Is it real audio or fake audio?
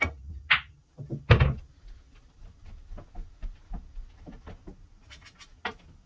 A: real